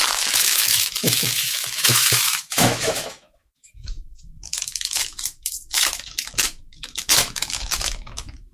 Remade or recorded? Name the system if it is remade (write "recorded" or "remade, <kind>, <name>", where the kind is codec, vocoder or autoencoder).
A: remade, autoencoder, DAC-VAE